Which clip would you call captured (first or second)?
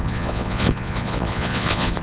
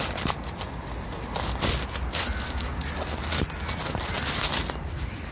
second